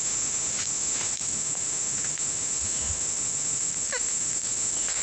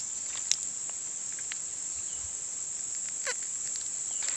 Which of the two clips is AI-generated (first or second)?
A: first